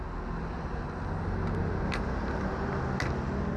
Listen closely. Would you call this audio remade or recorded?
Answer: recorded